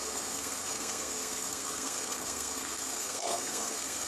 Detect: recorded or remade remade